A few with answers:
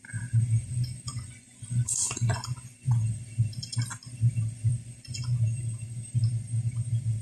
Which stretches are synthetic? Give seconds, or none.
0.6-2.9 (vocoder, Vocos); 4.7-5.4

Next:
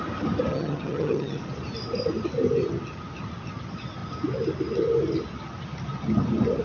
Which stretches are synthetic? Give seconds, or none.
0.5-1.4 (vocoder, HiFi-GAN)